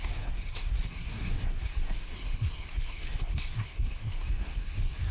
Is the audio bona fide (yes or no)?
no